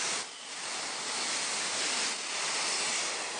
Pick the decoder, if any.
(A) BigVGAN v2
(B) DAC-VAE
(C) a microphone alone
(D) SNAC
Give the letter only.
C